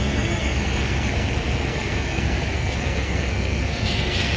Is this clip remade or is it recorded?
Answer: remade